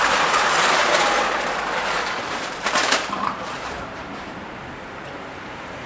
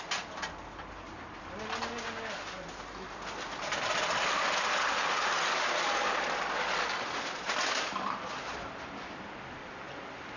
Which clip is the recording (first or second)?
second